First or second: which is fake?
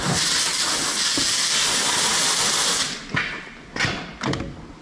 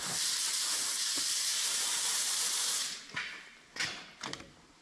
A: second